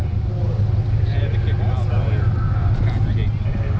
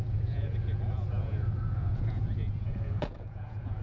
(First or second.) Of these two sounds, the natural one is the first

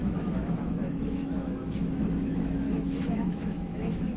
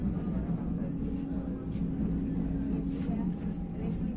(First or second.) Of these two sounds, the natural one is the second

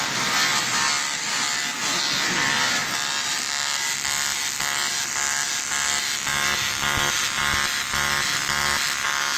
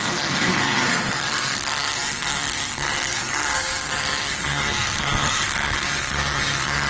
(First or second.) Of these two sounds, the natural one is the first